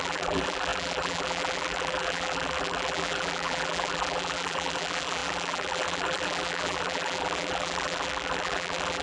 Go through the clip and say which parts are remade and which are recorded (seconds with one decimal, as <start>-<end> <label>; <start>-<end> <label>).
0.0-9.0 remade